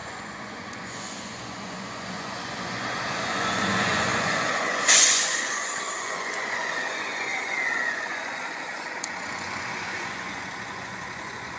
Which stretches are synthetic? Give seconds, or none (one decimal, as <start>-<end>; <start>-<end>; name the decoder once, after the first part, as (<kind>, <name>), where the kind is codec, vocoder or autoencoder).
0.0-11.6 (vocoder, Vocos)